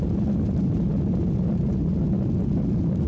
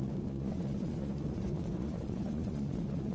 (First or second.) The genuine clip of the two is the first